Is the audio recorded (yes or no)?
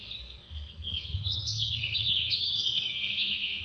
no